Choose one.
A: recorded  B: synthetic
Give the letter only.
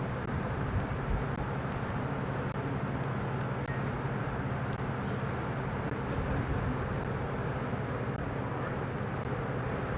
A